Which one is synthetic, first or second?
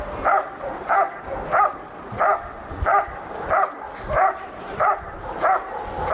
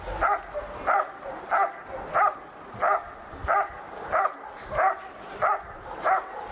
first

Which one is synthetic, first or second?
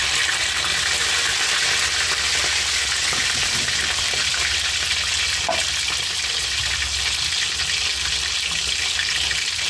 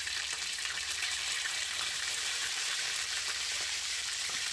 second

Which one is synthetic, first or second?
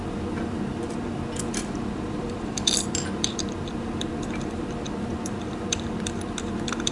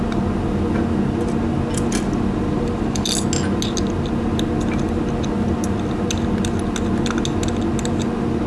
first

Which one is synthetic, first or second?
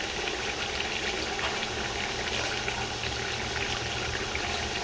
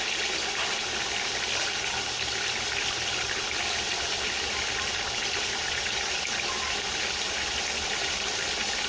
second